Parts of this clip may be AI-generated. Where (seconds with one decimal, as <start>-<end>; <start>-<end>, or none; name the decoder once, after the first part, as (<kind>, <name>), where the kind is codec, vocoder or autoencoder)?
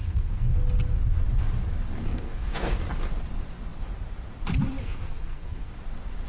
0.0-0.6 (codec, SNAC); 2.0-2.8; 4.8-5.7